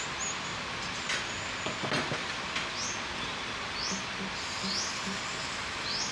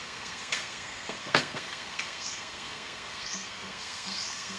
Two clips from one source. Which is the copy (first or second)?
second